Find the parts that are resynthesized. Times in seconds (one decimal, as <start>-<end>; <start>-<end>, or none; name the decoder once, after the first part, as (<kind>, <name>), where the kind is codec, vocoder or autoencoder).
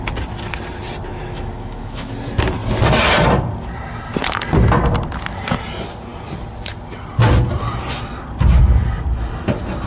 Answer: 1.1-2.1 (autoencoder, DAC-VAE)